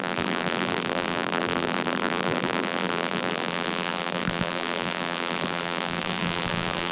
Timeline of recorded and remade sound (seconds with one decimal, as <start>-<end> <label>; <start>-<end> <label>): 0.0-6.9 remade